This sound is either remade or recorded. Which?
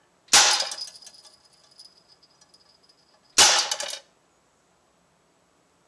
recorded